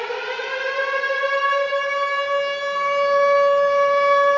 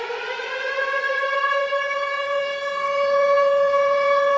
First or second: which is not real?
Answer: second